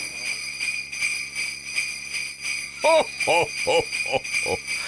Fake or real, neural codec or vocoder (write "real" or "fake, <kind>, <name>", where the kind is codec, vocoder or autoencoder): real